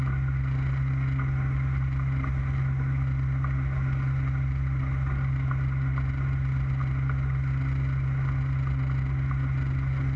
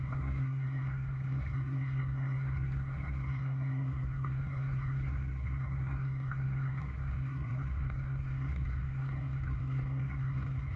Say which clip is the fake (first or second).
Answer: second